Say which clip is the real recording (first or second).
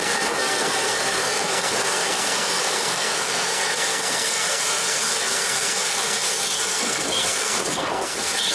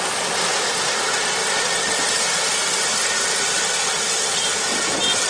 second